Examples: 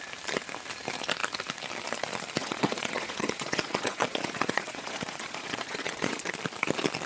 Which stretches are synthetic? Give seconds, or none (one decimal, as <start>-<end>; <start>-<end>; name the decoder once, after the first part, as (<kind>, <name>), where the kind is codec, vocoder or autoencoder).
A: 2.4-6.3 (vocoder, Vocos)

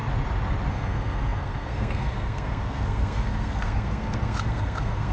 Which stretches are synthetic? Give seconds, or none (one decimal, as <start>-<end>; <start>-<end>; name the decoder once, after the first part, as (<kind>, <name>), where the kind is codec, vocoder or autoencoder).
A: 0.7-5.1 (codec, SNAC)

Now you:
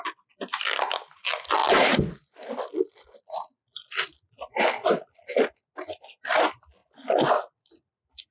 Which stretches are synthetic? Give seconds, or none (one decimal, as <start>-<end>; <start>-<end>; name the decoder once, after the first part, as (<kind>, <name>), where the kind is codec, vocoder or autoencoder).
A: none

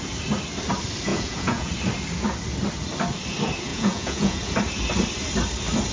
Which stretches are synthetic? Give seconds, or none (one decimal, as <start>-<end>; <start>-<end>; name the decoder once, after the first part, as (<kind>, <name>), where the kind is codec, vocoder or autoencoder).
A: 1.1-1.7 (vocoder, Vocos); 3.7-4.5

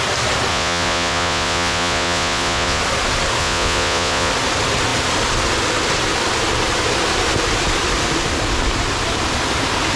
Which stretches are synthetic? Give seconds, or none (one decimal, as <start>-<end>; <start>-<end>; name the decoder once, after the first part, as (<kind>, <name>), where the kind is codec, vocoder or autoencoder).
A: 0.5-2.8 (vocoder, Vocos); 3.4-4.3